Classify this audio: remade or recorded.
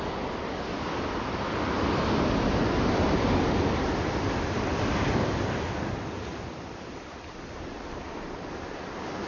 recorded